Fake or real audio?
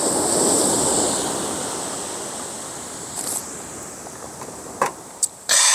real